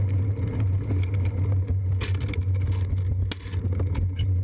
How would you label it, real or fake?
real